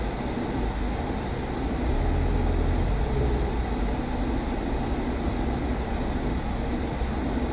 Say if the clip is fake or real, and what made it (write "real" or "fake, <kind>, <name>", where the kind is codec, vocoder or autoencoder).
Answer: real